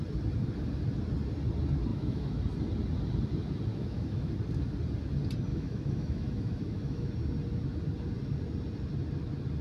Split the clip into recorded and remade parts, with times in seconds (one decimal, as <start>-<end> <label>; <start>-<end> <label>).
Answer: 0.0-1.9 recorded; 1.9-2.4 remade; 2.4-3.7 recorded; 3.7-4.3 remade; 4.3-5.5 recorded; 5.5-7.1 remade; 7.1-9.6 recorded